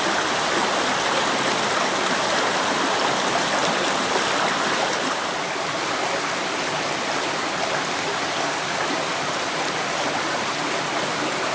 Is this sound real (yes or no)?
yes